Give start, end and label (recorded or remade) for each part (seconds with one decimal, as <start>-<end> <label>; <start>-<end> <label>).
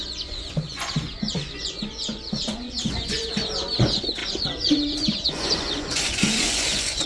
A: 0.0-7.1 remade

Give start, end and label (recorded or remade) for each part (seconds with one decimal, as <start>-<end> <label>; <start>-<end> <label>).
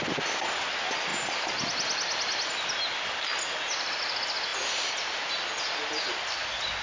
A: 0.0-6.8 recorded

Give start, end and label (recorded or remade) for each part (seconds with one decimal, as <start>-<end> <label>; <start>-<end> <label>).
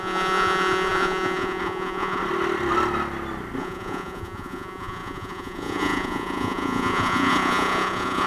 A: 0.0-2.2 remade; 2.2-3.6 recorded; 3.6-8.3 remade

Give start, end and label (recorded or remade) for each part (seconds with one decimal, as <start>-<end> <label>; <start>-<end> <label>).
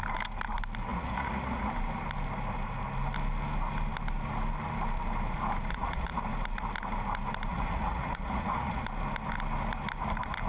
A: 0.0-0.9 recorded; 0.9-1.7 remade; 1.7-5.7 recorded; 5.7-6.2 remade; 6.2-7.5 recorded; 7.5-8.8 remade; 8.8-10.5 recorded